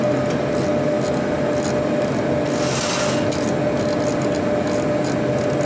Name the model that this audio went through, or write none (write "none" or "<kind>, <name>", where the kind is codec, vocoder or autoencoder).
none